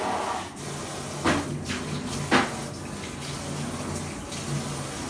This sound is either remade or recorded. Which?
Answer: recorded